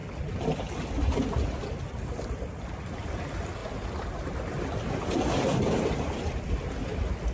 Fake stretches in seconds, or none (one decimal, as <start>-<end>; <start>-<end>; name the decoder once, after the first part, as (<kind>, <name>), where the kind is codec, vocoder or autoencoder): none